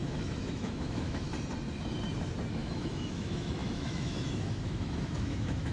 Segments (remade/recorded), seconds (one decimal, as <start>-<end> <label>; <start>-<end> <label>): 0.0-1.3 remade; 1.3-2.5 recorded; 2.5-5.7 remade